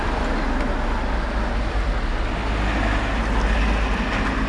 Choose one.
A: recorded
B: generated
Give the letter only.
A